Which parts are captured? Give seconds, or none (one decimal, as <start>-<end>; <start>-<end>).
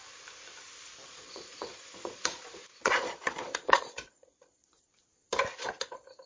0.0-1.0; 4.8-6.3